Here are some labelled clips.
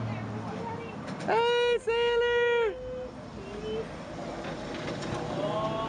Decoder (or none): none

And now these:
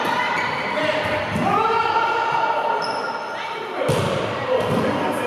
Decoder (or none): none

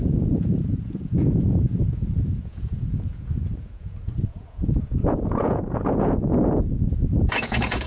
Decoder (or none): vocoder, Vocos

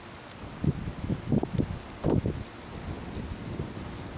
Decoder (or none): none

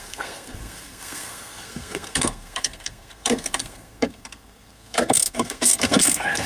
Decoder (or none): codec, SNAC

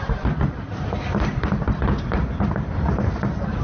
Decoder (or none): none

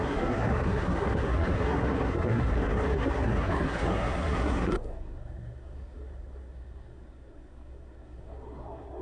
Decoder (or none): codec, SNAC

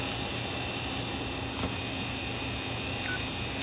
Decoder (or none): none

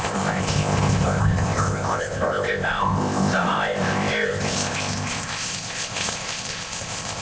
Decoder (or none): codec, ZipCodec